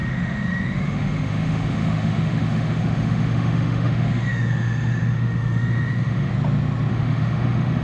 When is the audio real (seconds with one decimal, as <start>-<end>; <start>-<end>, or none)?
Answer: 6.3-6.9